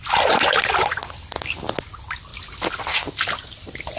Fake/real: real